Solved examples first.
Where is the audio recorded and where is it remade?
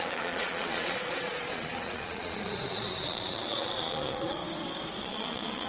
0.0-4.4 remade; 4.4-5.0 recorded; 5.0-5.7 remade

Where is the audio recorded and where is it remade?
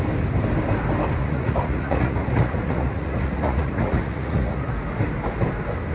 0.0-1.2 recorded; 1.2-4.7 remade; 4.7-5.9 recorded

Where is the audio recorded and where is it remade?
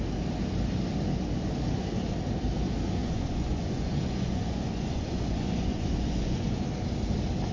0.0-3.0 recorded; 3.0-6.6 remade; 6.6-7.5 recorded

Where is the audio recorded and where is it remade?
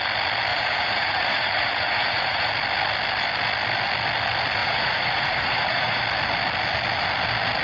0.0-0.5 recorded; 0.5-2.5 remade; 2.5-4.6 recorded; 4.6-6.0 remade; 6.0-7.6 recorded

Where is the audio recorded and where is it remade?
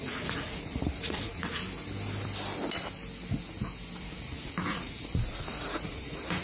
0.0-1.6 remade; 1.6-4.0 recorded; 4.0-6.4 remade